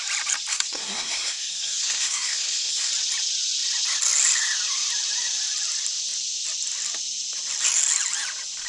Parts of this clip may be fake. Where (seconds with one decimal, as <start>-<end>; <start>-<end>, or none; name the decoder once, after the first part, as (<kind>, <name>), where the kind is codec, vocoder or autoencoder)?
0.5-2.9 (codec, SNAC)